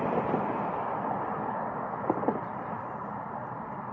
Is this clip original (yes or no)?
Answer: yes